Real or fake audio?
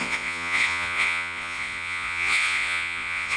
fake